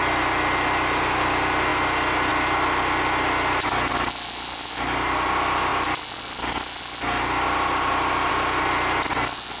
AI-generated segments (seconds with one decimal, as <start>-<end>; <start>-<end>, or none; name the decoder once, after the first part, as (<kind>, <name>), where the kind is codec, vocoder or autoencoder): none